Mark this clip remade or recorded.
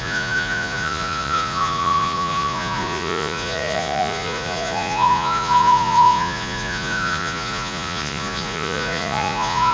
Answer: remade